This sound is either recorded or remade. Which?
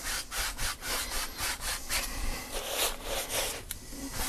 recorded